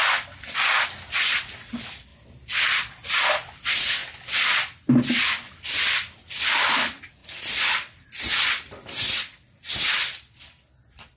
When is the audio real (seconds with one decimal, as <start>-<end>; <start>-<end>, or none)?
0.0-11.2